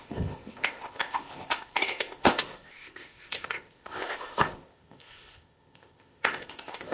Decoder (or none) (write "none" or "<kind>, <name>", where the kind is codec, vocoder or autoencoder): codec, ZipCodec